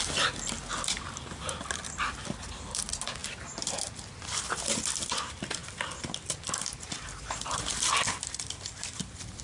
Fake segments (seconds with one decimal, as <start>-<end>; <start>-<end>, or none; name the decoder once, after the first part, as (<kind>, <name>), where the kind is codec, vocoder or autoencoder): 0.0-3.2 (vocoder, BigVGAN v2); 4.5-9.4